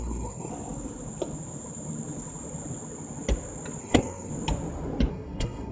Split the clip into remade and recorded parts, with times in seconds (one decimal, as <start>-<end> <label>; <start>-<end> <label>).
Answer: 0.0-0.5 remade; 0.5-3.8 recorded; 3.8-4.3 remade; 4.3-5.1 recorded; 5.1-5.7 remade